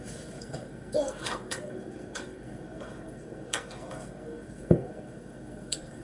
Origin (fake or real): fake